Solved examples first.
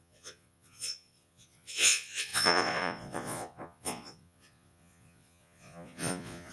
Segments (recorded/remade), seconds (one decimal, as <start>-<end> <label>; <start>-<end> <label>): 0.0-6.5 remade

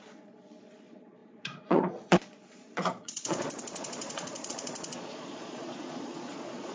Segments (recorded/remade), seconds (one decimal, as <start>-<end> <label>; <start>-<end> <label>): 0.0-6.7 remade

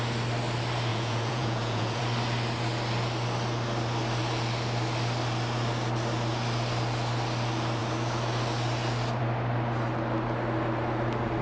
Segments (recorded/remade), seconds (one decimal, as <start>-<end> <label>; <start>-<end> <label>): 0.0-0.9 recorded; 0.9-2.0 remade; 2.0-11.4 recorded